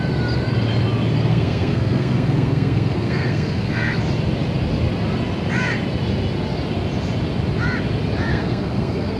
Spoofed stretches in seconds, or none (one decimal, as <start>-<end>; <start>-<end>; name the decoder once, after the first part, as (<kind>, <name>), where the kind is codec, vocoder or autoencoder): 1.3-4.0 (codec, SNAC); 8.3-9.2